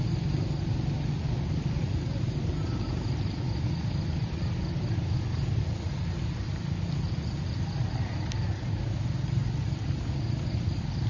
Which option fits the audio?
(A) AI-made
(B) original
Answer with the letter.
B